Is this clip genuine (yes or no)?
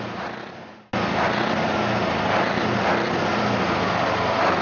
yes